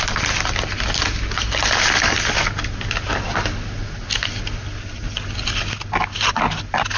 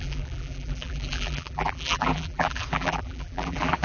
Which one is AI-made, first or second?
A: second